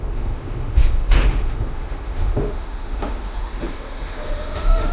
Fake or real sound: fake